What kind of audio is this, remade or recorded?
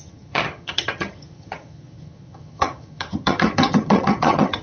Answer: remade